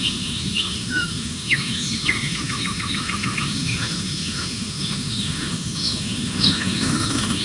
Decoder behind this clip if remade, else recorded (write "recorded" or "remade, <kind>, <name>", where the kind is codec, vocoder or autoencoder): remade, autoencoder, DAC-VAE